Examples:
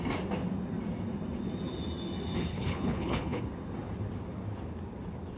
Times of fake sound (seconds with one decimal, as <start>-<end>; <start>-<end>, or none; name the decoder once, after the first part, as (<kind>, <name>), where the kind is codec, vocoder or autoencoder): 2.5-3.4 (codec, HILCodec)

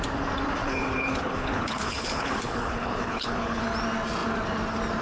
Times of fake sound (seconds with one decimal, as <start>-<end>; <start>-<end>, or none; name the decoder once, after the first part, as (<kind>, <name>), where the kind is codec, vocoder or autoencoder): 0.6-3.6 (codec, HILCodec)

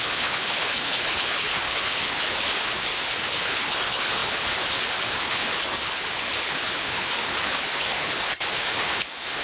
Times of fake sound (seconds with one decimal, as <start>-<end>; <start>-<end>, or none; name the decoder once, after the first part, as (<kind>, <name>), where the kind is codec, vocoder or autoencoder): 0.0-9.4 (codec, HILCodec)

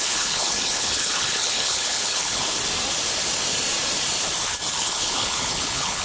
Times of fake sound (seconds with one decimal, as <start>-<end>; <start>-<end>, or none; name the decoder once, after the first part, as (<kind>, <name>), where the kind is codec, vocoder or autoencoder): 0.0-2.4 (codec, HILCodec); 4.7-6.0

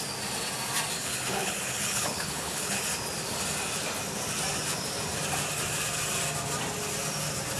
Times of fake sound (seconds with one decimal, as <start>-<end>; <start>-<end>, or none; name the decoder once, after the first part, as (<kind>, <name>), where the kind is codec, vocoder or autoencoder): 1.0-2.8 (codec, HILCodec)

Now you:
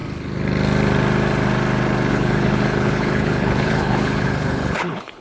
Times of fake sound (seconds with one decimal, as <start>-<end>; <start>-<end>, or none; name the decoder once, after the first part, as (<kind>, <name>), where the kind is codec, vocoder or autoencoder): 2.1-5.2 (codec, HILCodec)

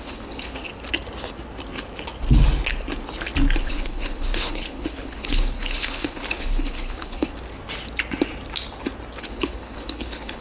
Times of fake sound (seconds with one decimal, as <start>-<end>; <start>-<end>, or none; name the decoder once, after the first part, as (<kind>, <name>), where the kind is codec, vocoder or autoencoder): 0.0-0.7 (codec, HILCodec); 3.6-7.3; 9.2-10.4